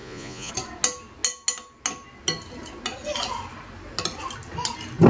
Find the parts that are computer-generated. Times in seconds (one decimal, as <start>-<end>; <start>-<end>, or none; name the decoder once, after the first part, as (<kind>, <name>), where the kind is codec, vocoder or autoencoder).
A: 0.0-0.5 (vocoder, Vocos)